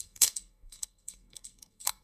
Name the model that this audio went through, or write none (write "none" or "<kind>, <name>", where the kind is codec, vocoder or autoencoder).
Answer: codec, SNAC